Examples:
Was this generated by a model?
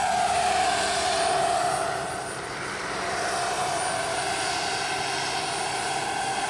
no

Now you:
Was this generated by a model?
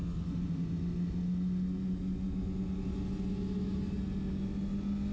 no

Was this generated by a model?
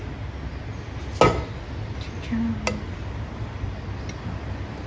no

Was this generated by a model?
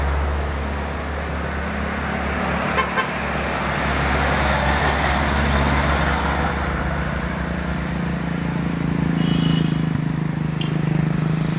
no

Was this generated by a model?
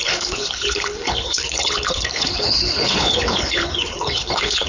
yes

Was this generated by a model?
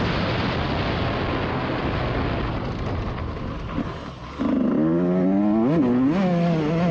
no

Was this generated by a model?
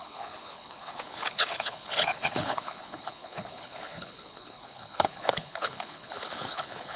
yes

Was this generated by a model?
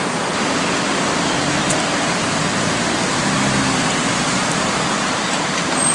no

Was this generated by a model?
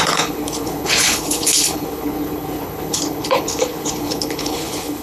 yes